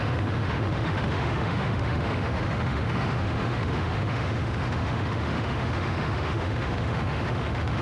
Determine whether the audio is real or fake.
fake